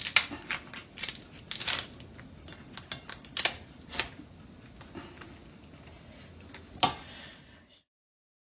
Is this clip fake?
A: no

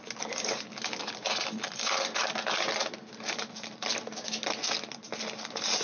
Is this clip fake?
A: no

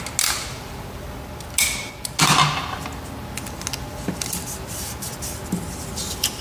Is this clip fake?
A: no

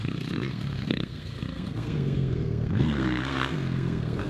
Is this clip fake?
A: yes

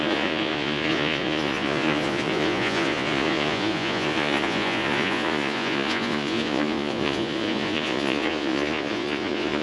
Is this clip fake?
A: yes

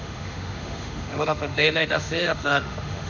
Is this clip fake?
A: yes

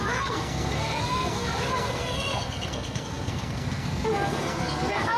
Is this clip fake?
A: yes